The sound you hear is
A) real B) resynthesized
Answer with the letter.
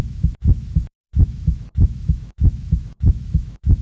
B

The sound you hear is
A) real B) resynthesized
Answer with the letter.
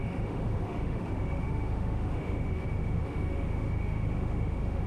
B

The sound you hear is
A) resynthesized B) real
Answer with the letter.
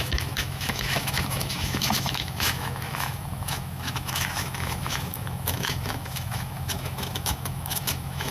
A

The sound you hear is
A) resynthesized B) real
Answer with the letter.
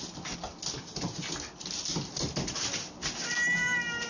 B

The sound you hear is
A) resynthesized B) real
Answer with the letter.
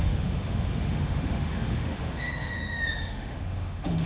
A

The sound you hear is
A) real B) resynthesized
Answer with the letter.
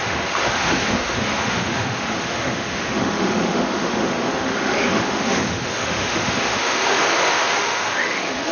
B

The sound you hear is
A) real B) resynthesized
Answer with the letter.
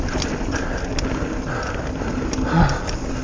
A